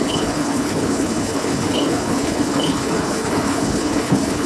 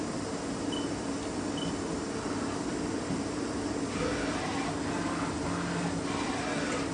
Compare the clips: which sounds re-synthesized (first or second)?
first